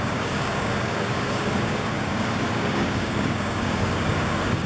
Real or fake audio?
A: fake